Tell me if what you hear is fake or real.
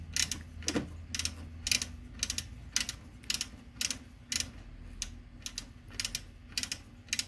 real